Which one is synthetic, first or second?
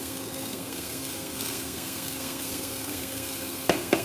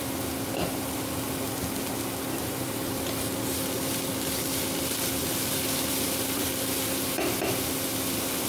first